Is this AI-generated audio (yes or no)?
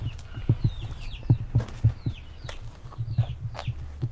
no